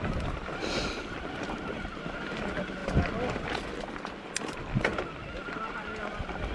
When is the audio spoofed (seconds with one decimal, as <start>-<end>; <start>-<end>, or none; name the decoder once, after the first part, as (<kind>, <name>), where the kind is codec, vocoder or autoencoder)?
none